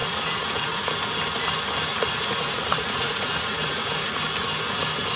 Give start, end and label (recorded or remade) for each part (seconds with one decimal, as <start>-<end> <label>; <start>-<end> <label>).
0.0-0.9 remade; 0.9-1.9 recorded; 1.9-4.2 remade; 4.2-5.2 recorded